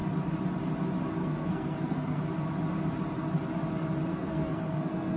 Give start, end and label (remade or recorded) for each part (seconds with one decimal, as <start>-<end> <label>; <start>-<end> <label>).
0.0-1.2 recorded; 1.2-2.2 remade; 2.2-4.1 recorded; 4.1-5.2 remade